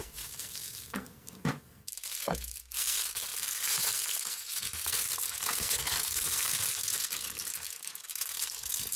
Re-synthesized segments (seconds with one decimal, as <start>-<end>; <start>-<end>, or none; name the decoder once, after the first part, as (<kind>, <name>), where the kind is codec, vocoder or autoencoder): 0.0-9.0 (codec, SNAC)